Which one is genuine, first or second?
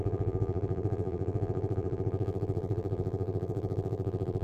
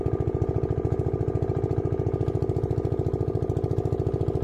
second